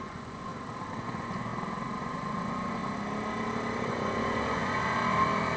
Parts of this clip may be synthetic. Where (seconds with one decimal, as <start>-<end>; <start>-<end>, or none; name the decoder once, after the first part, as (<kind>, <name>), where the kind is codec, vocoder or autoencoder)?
0.0-0.5 (vocoder, Vocos); 1.0-1.5; 2.0-2.8; 3.9-5.0